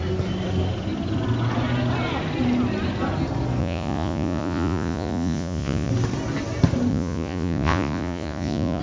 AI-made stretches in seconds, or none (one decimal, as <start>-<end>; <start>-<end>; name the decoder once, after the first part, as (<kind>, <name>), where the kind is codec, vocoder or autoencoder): 3.6-5.9 (vocoder, Vocos); 6.9-8.8